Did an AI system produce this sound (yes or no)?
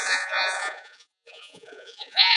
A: yes